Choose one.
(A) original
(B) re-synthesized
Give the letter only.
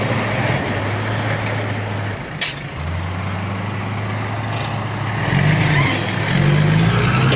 A